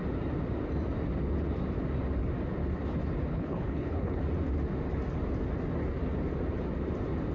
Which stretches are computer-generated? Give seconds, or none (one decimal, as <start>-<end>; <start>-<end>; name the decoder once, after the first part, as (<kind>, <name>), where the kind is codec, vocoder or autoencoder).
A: 3.3-4.2 (codec, HILCodec)